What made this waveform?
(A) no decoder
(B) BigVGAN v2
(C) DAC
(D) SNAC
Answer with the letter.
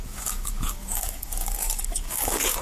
C